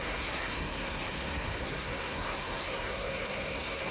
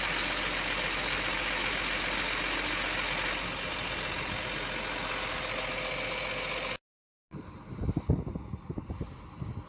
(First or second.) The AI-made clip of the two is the first